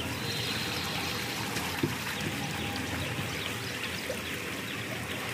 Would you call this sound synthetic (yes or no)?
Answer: yes